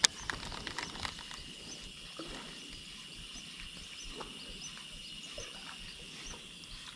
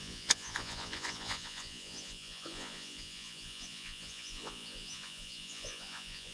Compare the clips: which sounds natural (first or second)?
first